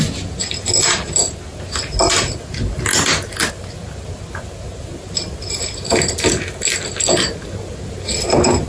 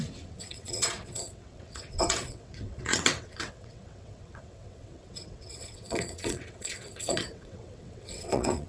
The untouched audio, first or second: first